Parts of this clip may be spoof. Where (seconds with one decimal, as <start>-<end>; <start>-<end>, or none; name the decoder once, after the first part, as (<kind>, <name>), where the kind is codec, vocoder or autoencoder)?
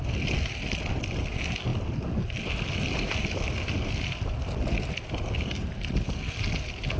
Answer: none